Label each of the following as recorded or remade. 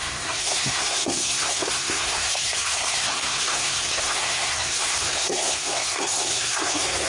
remade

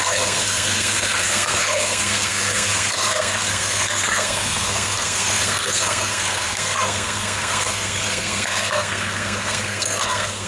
remade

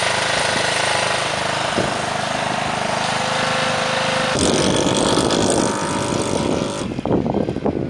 recorded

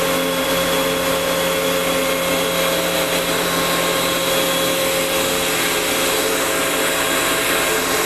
recorded